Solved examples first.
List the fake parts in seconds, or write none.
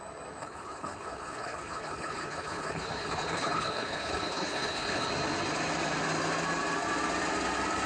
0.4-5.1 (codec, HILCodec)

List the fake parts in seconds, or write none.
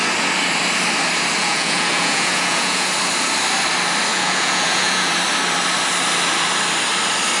1.4-2.9 (vocoder, Vocos); 4.1-5.1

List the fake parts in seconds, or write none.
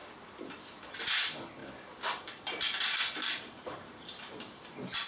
none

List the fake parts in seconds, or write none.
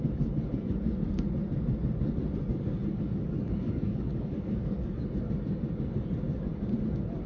2.9-5.0 (codec, DAC)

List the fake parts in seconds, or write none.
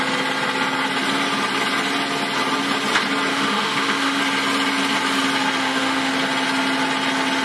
3.3-4.2 (autoencoder, DAC-VAE); 5.6-6.1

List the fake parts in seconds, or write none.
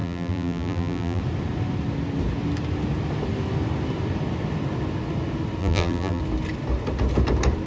0.0-1.2 (vocoder, BigVGAN v2); 5.6-6.2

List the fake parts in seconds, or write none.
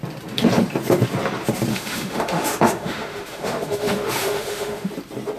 1.7-4.9 (autoencoder, DAC-VAE)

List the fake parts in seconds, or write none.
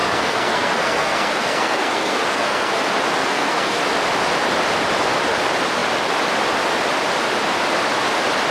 0.0-2.8 (codec, SNAC); 3.2-3.8